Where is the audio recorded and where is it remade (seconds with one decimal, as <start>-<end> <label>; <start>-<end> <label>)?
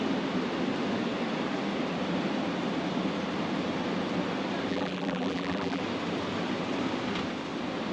0.0-4.7 recorded; 4.7-5.8 remade; 5.8-7.9 recorded